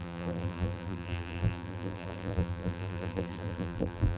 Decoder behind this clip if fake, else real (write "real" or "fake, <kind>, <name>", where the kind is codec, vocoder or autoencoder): fake, vocoder, BigVGAN v2